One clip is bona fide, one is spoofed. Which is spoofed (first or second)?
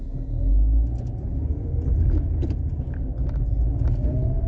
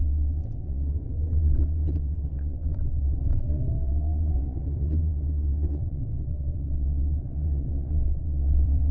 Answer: second